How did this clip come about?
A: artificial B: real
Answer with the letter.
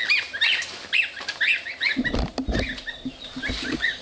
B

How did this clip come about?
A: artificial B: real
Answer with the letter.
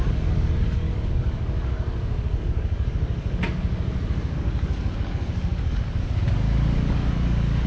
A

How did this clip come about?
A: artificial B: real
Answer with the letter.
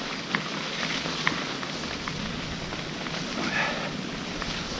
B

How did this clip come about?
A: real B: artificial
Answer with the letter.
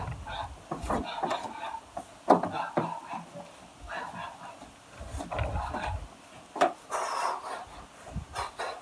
A